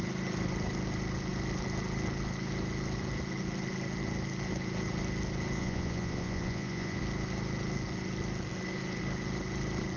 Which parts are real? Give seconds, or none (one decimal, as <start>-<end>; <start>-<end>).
0.0-5.6; 7.0-10.0